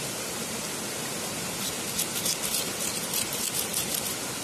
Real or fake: real